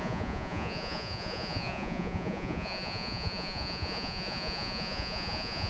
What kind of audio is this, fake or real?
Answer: fake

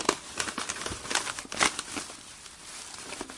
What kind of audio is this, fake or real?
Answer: real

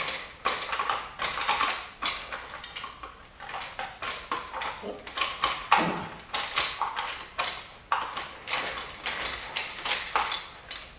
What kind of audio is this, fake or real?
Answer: real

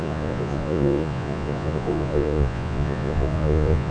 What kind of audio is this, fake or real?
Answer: fake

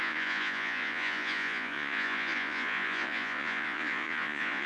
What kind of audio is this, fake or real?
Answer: fake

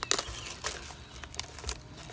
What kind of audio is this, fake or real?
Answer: real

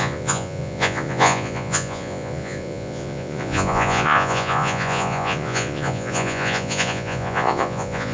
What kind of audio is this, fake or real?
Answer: fake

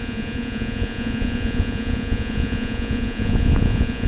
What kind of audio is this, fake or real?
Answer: fake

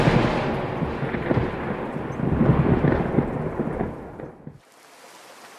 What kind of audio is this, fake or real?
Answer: real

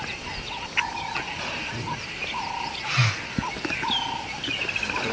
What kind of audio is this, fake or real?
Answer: real